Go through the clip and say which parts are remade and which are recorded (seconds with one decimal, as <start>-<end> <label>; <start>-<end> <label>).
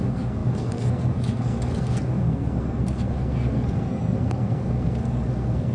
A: 0.0-5.7 remade